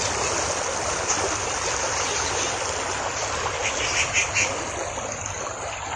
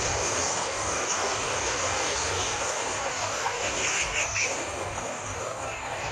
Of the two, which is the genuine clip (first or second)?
first